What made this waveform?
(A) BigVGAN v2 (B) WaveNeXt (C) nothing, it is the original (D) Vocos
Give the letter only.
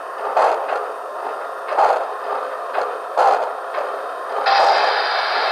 A